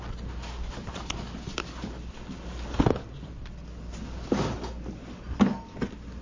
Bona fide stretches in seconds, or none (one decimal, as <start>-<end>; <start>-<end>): 0.0-6.2

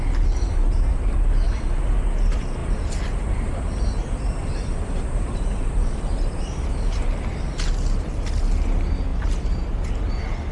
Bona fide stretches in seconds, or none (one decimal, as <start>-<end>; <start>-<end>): 0.0-0.9; 2.0-2.6; 7.2-10.5

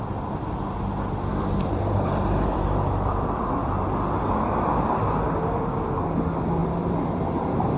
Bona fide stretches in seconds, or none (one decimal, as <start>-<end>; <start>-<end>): 0.0-1.3; 3.7-6.6

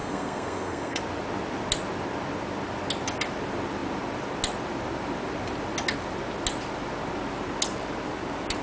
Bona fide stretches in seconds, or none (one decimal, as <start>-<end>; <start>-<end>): 1.0-8.6

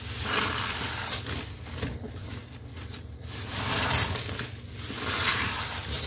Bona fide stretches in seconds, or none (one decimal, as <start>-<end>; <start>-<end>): 0.0-2.2; 3.6-5.3